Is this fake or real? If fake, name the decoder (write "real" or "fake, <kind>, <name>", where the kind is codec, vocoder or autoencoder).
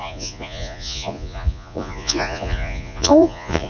fake, vocoder, Vocos